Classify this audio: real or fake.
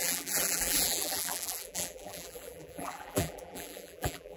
fake